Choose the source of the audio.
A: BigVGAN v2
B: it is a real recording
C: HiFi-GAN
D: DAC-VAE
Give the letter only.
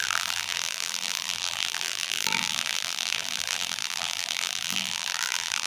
A